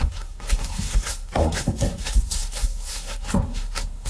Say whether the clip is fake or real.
fake